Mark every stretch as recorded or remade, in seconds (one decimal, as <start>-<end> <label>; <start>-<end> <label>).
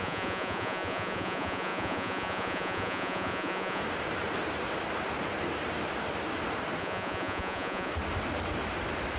0.0-3.8 remade; 3.8-6.8 recorded; 6.8-7.9 remade; 7.9-9.2 recorded